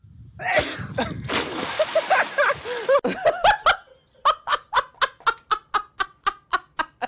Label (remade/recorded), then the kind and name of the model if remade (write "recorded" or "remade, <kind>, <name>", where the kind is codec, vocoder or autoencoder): recorded